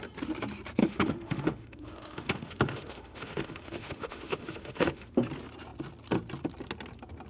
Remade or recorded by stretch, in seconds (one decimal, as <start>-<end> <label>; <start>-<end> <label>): 0.0-0.8 recorded; 0.8-5.2 remade; 5.2-7.3 recorded

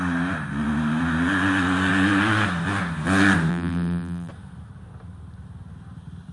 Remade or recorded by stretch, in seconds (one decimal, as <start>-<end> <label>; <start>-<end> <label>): 0.0-3.5 recorded; 3.5-4.3 remade; 4.3-6.3 recorded